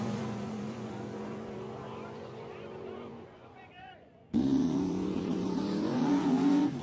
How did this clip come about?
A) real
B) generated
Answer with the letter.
B